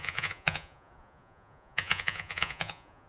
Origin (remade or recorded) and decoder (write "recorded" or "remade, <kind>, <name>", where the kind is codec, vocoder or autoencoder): remade, vocoder, Vocos